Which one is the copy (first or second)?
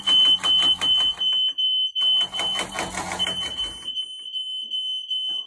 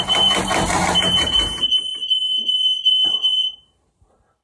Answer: second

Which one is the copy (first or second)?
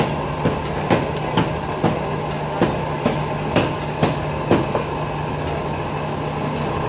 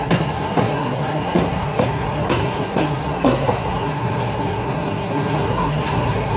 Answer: second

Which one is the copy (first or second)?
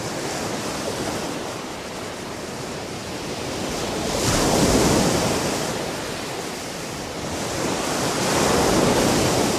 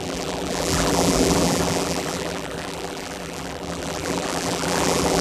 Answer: second